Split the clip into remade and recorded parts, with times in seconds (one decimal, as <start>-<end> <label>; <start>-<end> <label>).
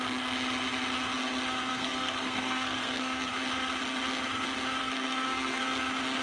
0.0-1.7 recorded; 1.7-3.3 remade; 3.3-4.8 recorded; 4.8-5.6 remade; 5.6-6.2 recorded